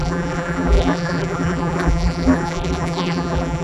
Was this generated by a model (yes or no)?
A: yes